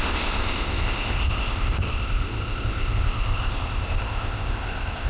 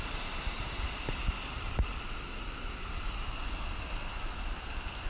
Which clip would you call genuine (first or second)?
second